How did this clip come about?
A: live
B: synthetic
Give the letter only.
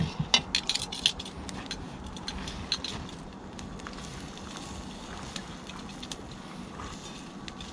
A